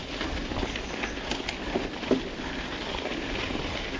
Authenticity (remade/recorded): recorded